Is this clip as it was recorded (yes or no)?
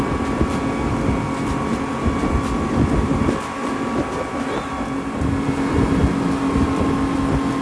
yes